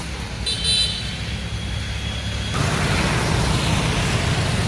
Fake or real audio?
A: real